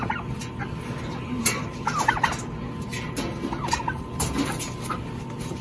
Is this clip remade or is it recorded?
recorded